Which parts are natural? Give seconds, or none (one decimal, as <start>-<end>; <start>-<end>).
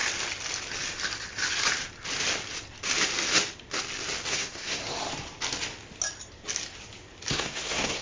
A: 0.0-4.3; 4.8-7.3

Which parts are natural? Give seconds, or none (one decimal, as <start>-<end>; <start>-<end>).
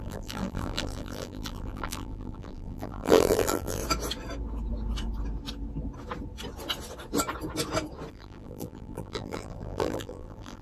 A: 3.8-8.1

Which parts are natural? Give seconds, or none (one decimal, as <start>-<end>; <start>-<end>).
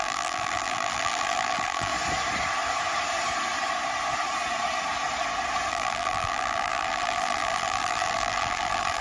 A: 1.9-5.7